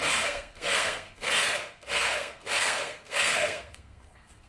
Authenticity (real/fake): fake